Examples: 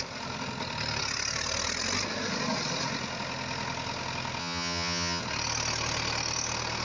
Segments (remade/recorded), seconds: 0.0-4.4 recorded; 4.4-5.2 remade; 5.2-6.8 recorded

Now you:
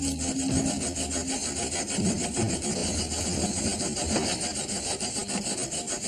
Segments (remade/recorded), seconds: 0.0-6.1 recorded

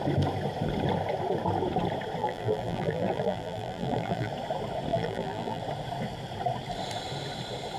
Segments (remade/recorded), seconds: 0.0-2.2 recorded; 2.2-4.3 remade; 4.3-4.9 recorded; 4.9-5.6 remade; 5.6-7.8 recorded

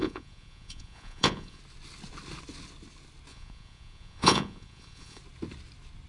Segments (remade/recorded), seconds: 0.0-1.6 remade; 1.6-3.3 recorded; 3.3-5.2 remade; 5.2-6.1 recorded

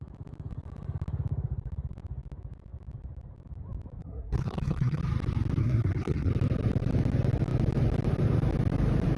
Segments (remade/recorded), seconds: 0.0-4.0 recorded; 4.0-5.0 remade; 5.0-5.6 recorded; 5.6-6.3 remade; 6.3-9.2 recorded

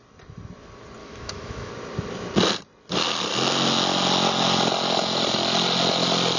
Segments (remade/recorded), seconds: 0.0-1.0 recorded; 1.0-1.7 remade; 1.7-6.4 recorded

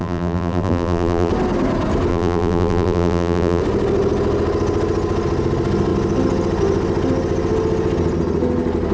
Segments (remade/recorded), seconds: 0.0-1.3 remade; 1.3-2.1 recorded; 2.1-3.6 remade; 3.6-8.9 recorded

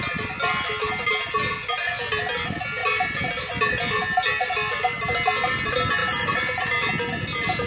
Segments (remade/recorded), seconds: 0.0-6.0 recorded; 6.0-6.9 remade; 6.9-7.7 recorded